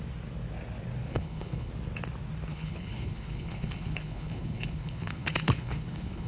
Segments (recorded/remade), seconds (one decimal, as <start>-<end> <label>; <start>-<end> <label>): 0.0-1.1 recorded; 1.1-1.7 remade; 1.7-2.5 recorded; 2.5-6.3 remade